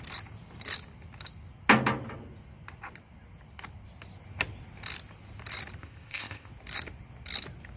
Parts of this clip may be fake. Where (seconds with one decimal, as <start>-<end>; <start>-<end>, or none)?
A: 5.8-6.5